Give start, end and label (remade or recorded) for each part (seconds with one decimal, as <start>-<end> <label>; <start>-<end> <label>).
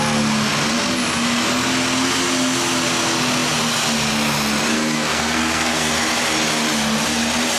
0.0-4.7 recorded; 4.7-5.9 remade; 5.9-7.6 recorded